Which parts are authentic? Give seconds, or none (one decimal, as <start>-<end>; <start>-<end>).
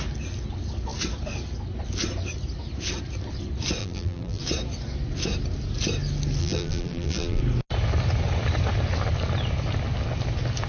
0.0-3.8; 4.4-6.4; 7.4-10.7